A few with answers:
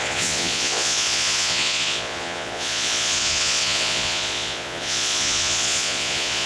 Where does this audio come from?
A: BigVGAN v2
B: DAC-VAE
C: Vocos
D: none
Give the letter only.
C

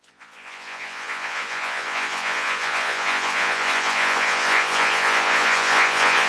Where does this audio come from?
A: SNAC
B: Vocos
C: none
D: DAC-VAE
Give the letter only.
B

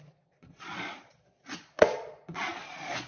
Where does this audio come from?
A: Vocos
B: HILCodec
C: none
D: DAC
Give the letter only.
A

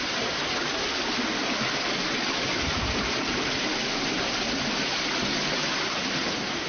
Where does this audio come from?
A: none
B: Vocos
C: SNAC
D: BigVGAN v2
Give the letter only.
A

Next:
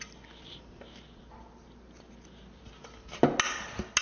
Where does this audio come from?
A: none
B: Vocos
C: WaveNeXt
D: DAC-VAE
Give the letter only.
A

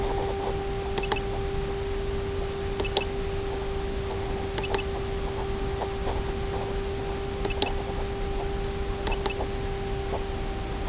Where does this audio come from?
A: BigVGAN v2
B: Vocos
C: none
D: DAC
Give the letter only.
C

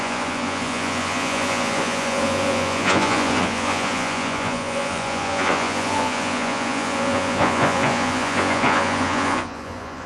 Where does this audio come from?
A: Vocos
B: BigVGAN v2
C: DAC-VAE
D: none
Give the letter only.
A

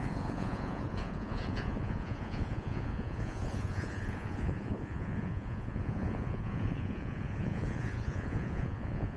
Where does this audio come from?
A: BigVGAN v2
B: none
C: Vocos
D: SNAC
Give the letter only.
C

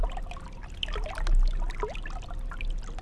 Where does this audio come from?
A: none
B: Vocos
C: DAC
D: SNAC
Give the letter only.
A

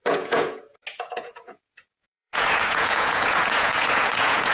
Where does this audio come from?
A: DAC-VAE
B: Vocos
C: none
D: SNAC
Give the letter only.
B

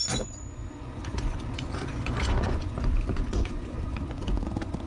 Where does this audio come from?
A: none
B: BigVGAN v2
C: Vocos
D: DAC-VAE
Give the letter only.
C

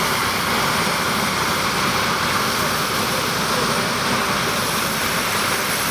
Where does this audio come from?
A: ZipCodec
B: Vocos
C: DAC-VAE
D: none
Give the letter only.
D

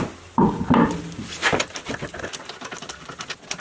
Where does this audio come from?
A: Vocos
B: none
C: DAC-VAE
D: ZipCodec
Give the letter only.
B